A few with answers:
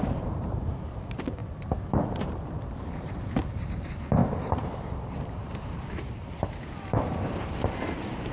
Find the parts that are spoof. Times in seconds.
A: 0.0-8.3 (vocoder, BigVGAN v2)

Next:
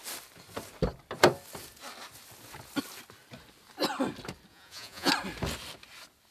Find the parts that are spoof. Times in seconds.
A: 4.5-5.1 (vocoder, Vocos)

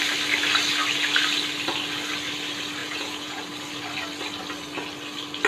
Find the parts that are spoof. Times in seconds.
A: 2.8-3.4 (vocoder, Vocos)